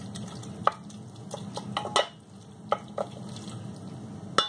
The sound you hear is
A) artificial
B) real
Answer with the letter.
B